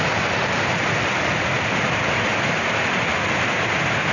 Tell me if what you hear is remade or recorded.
recorded